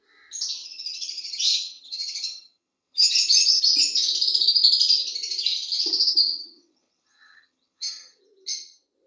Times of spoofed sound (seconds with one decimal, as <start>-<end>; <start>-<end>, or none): 0.6-3.2; 6.4-8.2